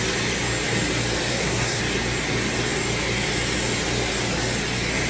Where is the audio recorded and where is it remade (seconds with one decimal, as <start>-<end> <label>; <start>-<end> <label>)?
0.0-1.3 recorded; 1.3-1.8 remade; 1.8-5.1 recorded